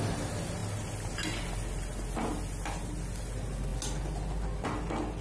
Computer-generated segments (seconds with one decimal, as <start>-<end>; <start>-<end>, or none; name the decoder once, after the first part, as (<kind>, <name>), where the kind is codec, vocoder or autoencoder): none